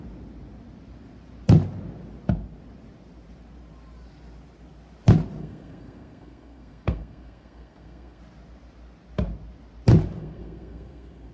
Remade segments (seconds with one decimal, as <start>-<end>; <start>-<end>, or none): 5.4-8.2; 10.2-11.3